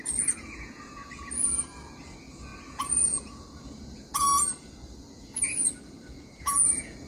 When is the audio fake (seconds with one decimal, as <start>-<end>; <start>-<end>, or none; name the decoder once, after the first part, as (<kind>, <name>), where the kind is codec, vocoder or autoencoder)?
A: 0.0-7.1 (vocoder, Vocos)